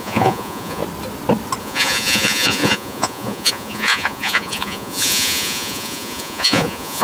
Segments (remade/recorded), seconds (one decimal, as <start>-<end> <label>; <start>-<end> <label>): 0.0-0.8 remade; 0.8-1.6 recorded; 1.6-7.0 remade